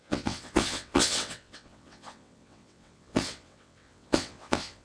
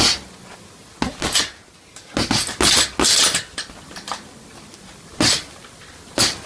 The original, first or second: second